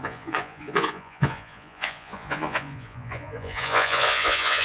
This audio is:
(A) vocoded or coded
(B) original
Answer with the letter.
A